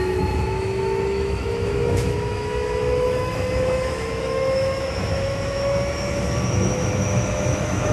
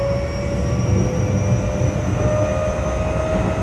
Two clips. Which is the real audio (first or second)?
second